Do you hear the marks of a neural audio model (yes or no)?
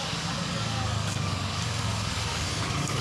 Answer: yes